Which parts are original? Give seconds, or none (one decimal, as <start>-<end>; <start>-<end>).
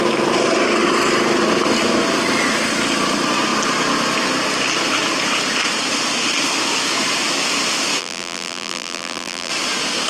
0.0-8.0; 9.5-10.1